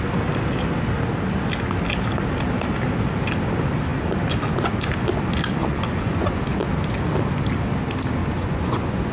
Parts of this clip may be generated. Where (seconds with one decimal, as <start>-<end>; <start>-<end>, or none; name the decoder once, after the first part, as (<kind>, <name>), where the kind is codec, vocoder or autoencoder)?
5.6-6.4 (vocoder, Vocos); 8.2-9.1